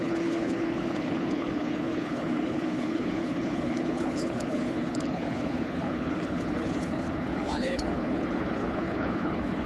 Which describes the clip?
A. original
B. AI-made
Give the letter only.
B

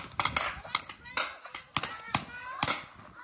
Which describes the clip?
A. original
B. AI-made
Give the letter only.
A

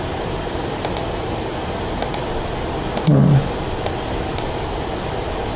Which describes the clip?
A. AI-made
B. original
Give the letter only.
B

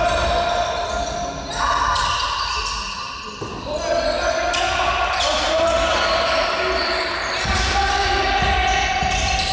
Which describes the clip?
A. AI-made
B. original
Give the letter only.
B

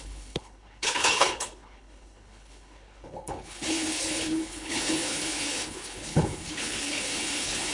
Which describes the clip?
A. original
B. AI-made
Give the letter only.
B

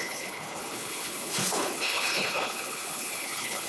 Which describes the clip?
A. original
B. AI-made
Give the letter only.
B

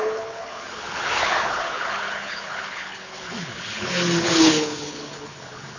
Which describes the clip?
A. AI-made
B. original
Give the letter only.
A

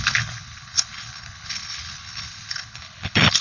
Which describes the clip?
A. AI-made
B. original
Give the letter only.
A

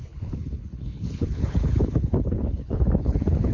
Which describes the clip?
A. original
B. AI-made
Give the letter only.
B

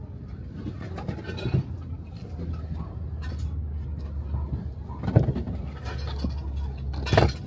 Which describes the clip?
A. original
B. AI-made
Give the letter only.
A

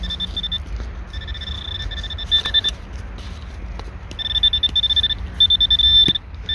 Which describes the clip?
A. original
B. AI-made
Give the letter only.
A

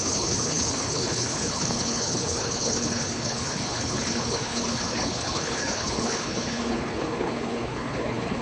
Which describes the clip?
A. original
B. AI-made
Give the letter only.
B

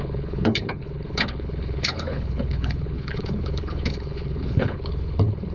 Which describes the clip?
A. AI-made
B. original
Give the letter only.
A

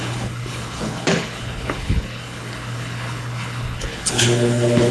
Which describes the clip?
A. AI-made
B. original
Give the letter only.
A